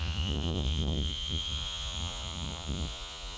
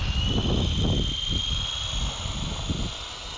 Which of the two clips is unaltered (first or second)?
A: second